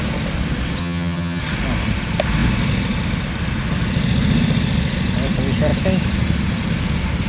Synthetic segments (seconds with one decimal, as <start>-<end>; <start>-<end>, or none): 0.8-1.4